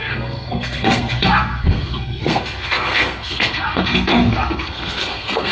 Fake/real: fake